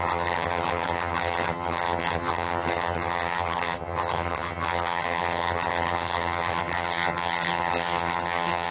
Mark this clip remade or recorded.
remade